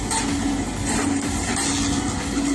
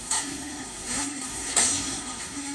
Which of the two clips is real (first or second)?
first